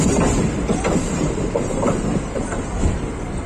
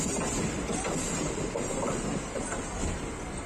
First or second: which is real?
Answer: second